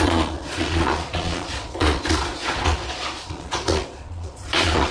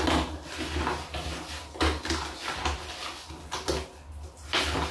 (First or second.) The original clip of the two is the second